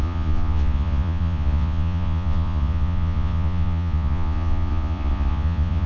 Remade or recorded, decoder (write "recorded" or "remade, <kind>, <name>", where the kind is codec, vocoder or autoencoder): remade, vocoder, Vocos